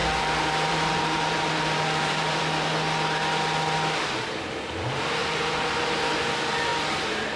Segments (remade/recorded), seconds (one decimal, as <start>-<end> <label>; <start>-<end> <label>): 0.0-2.4 remade; 2.4-5.2 recorded; 5.2-6.3 remade; 6.3-7.4 recorded